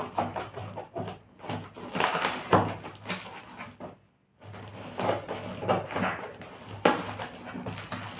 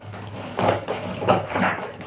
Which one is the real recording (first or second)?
first